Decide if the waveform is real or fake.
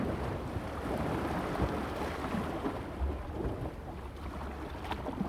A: real